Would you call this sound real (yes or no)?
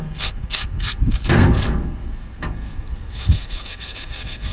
no